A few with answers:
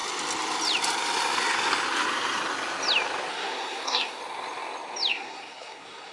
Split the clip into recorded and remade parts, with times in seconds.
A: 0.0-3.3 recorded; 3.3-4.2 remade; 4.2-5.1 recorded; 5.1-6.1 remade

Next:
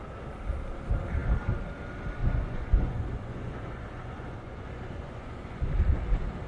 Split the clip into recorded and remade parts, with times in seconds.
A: 0.0-2.2 recorded; 2.2-5.7 remade; 5.7-6.5 recorded

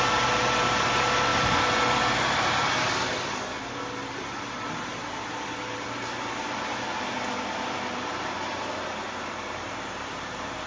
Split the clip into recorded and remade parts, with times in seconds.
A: 0.0-10.7 recorded